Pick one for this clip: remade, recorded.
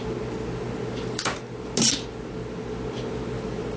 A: recorded